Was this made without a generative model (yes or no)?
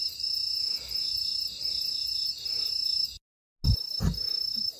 yes